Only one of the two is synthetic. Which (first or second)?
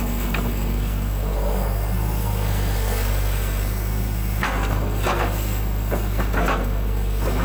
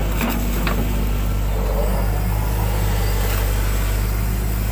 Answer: first